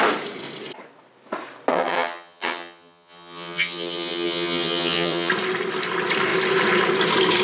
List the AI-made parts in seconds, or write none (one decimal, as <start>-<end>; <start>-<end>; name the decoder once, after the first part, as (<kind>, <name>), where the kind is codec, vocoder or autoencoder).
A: 1.7-5.3 (vocoder, HiFi-GAN)